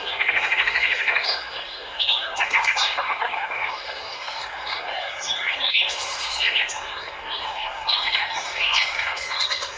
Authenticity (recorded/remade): remade